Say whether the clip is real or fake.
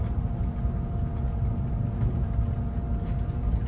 real